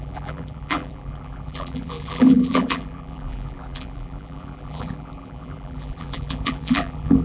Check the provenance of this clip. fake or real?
fake